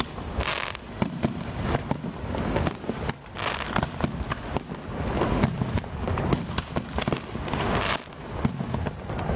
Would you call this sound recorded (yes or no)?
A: yes